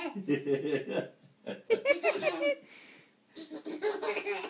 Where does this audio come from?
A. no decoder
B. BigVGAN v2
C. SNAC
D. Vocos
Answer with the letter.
A